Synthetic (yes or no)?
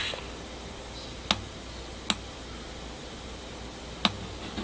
no